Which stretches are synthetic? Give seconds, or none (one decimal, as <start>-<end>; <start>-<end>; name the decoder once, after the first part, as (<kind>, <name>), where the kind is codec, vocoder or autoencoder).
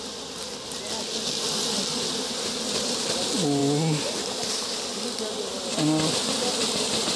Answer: none